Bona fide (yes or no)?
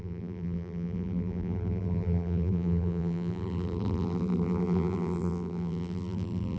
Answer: no